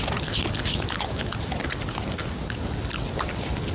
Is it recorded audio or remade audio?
recorded